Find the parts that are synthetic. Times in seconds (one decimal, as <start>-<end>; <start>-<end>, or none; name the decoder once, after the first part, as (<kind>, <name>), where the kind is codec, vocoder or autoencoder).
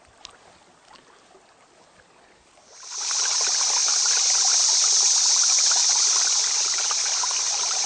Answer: none